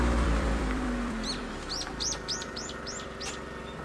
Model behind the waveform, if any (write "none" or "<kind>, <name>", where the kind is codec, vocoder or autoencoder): vocoder, BigVGAN v2